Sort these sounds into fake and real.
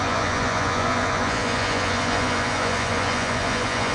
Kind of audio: fake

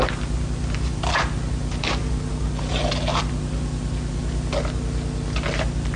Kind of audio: real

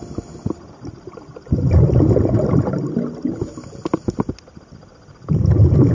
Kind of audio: real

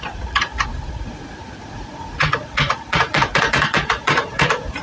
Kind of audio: fake